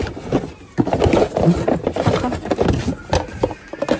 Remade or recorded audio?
recorded